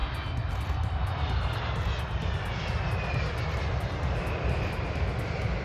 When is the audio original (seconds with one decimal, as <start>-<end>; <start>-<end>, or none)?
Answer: 0.0-5.6